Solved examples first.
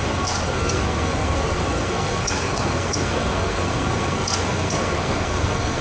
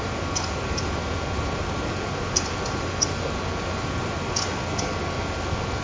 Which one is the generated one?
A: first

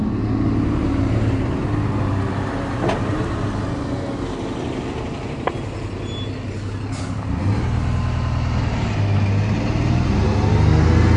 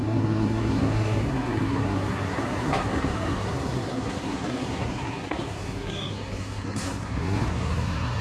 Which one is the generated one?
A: second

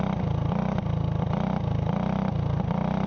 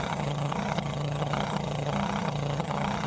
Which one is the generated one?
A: second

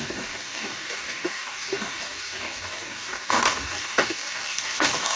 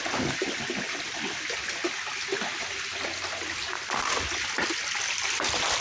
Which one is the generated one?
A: first